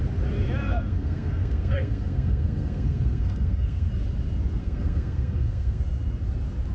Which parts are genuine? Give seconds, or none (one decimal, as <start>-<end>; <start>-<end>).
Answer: 0.0-0.6; 3.9-4.6; 5.8-6.7